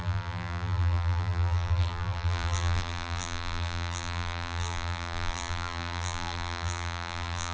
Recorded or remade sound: remade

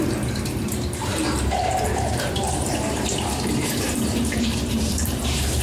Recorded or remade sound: remade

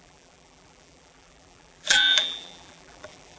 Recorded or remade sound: remade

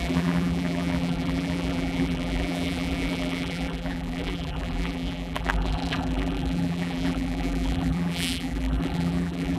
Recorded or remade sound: remade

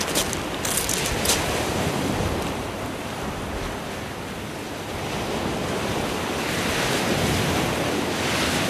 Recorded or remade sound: recorded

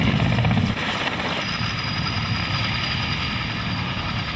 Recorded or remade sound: remade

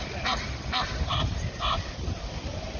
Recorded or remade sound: remade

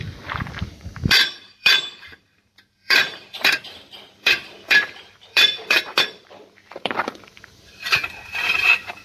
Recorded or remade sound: remade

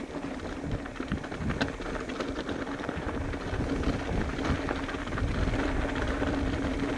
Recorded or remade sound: recorded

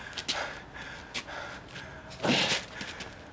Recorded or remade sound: recorded